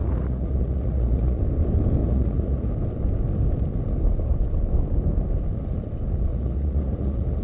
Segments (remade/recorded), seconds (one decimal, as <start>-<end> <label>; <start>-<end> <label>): 0.0-1.4 remade; 1.4-2.0 recorded; 2.0-2.7 remade; 2.7-6.3 recorded; 6.3-7.4 remade